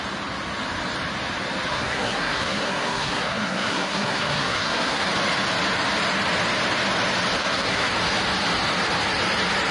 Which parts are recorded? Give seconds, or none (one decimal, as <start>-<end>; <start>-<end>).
0.0-1.7; 5.1-7.4; 7.9-9.7